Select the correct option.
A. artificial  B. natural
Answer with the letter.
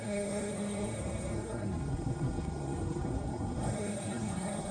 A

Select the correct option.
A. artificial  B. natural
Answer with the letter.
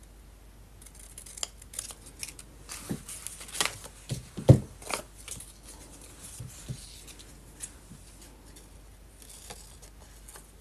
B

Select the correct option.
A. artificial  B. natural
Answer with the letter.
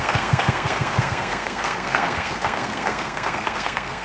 A